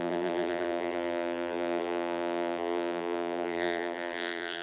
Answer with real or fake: fake